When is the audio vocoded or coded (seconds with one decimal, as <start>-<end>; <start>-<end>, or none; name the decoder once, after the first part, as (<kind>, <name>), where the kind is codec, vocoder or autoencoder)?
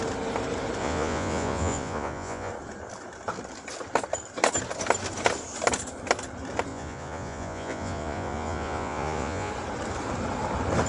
0.8-2.5 (vocoder, Vocos); 6.7-9.5